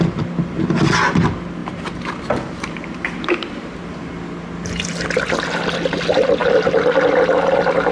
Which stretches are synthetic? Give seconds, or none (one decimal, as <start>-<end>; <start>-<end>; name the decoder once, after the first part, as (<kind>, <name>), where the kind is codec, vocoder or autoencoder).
1.6-4.1 (vocoder, BigVGAN v2)